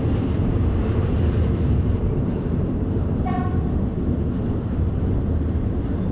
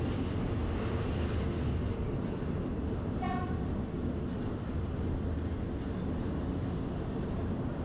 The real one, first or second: second